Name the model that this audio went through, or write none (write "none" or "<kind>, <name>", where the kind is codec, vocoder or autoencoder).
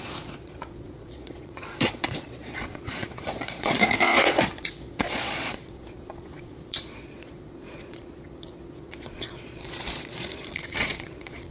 vocoder, Vocos